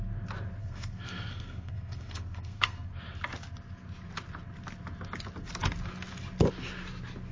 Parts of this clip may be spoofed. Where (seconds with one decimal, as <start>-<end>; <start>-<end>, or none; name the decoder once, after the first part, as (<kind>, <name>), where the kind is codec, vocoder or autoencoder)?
0.6-2.9 (codec, SNAC)